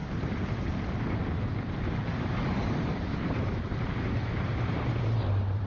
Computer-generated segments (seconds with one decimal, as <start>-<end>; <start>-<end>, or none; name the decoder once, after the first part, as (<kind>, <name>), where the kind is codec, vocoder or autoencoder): 0.0-5.7 (vocoder, BigVGAN v2)